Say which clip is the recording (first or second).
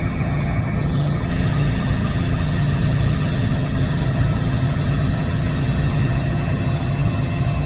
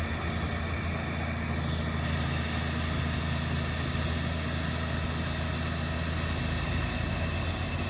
second